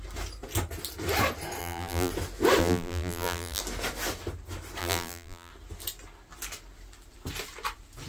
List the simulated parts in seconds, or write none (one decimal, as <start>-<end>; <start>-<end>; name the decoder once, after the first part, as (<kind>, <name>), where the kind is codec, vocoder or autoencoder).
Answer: 1.6-2.1 (vocoder, BigVGAN v2); 2.6-3.6; 4.8-5.5